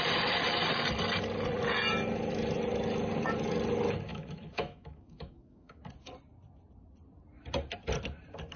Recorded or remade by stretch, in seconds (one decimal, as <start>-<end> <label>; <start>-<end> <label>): 0.0-4.1 recorded; 4.1-5.8 remade; 5.8-8.6 recorded